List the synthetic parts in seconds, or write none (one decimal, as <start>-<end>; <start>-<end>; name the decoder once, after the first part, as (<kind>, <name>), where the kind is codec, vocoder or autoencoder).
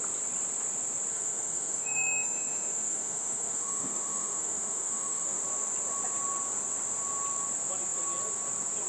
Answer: 1.1-5.4 (autoencoder, DAC-VAE)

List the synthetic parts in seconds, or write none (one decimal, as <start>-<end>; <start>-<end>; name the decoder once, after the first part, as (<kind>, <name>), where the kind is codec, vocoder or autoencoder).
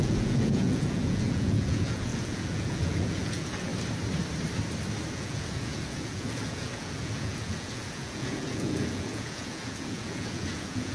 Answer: 0.0-3.7 (vocoder, Vocos); 5.1-10.9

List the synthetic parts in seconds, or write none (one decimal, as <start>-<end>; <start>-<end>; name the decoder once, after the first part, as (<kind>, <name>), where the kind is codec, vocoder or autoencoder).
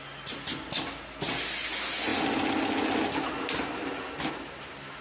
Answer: none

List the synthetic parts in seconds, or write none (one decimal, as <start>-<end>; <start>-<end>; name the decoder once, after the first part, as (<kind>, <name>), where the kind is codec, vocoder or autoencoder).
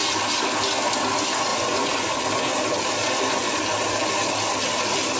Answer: 1.5-2.2 (vocoder, Vocos)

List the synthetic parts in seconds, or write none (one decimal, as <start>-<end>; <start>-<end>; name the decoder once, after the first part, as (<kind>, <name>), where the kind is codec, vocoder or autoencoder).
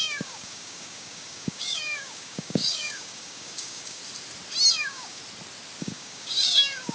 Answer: 0.0-4.0 (codec, DAC); 4.7-5.2; 5.8-6.9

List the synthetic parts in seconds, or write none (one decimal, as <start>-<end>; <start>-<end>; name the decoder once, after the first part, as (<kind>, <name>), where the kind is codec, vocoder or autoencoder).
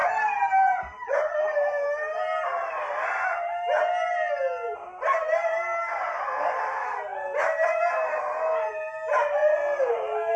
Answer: 0.0-2.9 (vocoder, BigVGAN v2)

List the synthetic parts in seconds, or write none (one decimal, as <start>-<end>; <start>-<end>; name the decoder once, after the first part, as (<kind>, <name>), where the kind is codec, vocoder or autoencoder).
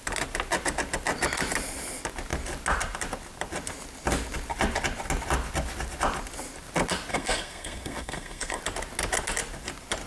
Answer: 7.1-8.6 (codec, SNAC)